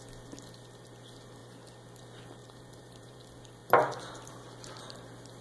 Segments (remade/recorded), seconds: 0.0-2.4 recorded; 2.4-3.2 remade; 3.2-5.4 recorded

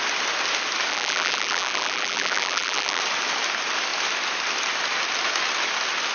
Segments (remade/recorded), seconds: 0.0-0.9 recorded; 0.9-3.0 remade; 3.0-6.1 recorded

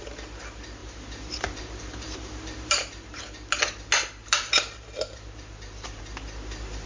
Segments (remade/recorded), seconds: 0.0-0.8 recorded; 0.8-3.2 remade; 3.2-4.2 recorded; 4.2-6.0 remade; 6.0-6.9 recorded